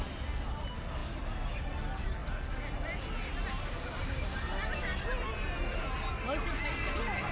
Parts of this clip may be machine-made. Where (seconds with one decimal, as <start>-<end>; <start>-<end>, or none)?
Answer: none